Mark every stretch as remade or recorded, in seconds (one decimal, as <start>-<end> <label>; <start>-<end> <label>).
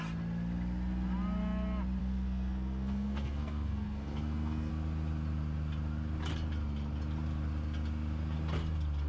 0.0-2.0 recorded; 2.0-4.7 remade; 4.7-9.1 recorded